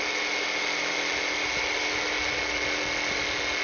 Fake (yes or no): no